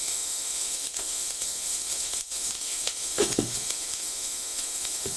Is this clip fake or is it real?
fake